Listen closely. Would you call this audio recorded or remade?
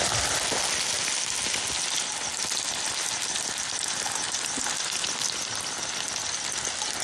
recorded